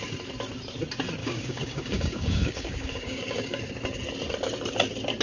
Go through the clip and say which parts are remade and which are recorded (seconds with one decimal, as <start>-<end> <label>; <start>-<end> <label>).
0.0-1.2 recorded; 1.2-3.6 remade; 3.6-5.2 recorded